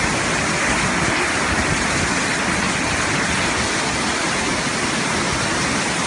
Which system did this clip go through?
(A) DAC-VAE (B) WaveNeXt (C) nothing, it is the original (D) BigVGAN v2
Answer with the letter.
C